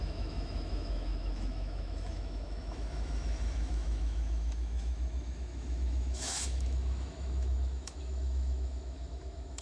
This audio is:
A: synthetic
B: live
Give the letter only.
A